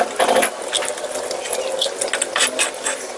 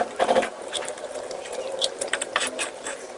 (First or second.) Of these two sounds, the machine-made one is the second